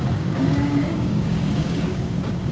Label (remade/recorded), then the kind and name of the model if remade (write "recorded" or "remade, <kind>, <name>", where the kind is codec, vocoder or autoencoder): remade, codec, DAC